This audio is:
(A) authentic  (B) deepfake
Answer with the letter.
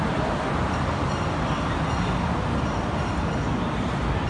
A